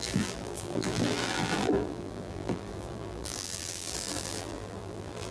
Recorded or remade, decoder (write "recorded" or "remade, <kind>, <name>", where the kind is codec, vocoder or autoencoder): remade, vocoder, BigVGAN v2